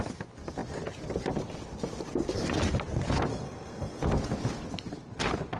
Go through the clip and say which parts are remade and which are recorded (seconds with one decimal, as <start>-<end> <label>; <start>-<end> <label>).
0.0-3.3 recorded; 3.3-4.0 remade; 4.0-5.6 recorded